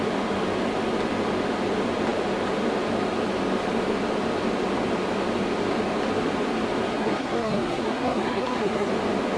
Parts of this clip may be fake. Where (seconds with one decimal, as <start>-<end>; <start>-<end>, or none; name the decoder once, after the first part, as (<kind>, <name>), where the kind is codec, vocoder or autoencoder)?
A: 6.9-8.9 (codec, SNAC)